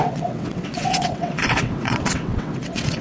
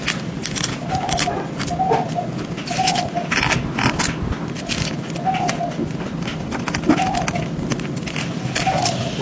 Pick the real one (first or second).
second